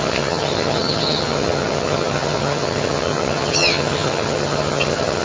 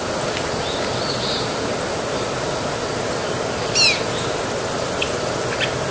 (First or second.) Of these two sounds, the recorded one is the second